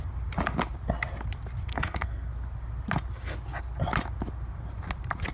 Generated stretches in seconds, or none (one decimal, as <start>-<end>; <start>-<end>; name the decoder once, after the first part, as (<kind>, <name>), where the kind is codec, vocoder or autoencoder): 1.7-2.3 (codec, SNAC)